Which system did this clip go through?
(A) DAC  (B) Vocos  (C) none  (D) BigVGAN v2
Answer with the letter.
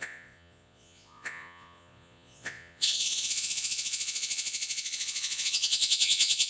B